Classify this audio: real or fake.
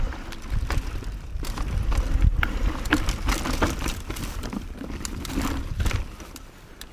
fake